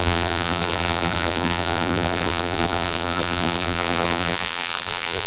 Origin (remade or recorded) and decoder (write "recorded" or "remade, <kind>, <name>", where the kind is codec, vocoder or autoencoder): remade, vocoder, BigVGAN v2